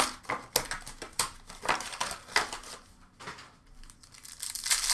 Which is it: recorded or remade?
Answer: recorded